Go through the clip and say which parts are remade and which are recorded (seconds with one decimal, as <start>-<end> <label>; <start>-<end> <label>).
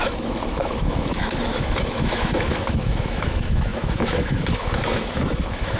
0.0-5.8 remade